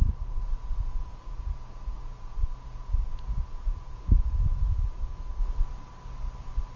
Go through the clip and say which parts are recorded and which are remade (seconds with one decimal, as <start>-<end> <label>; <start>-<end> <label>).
0.0-5.4 remade; 5.4-6.8 recorded